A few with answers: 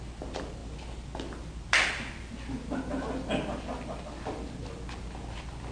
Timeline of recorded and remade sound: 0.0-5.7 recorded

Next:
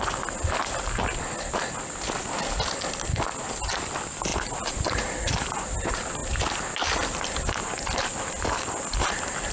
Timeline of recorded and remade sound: 0.0-9.5 recorded

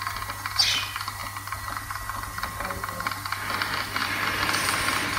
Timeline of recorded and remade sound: 0.0-4.0 recorded; 4.0-5.2 remade

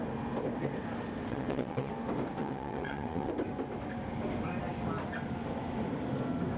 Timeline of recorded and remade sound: 0.0-1.3 recorded; 1.3-1.9 remade; 1.9-2.4 recorded; 2.4-3.3 remade; 3.3-6.6 recorded

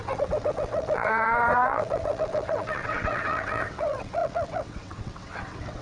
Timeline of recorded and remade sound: 0.0-5.8 remade

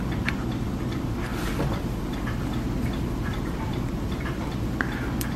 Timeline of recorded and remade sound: 0.0-1.3 recorded; 1.3-3.9 remade; 3.9-5.4 recorded

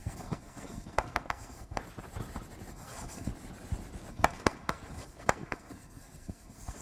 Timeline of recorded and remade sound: 0.0-1.8 remade; 1.8-2.7 recorded; 2.7-3.3 remade; 3.3-4.1 recorded; 4.1-6.8 remade